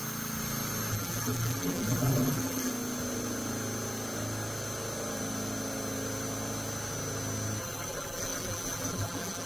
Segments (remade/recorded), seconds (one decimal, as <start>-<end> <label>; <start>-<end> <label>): 0.0-0.9 recorded; 0.9-2.7 remade; 2.7-7.6 recorded; 7.6-9.5 remade